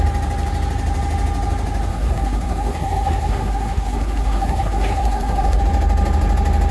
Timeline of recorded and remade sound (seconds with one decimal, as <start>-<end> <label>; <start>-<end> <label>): 0.0-1.9 recorded; 1.9-5.6 remade; 5.6-6.7 recorded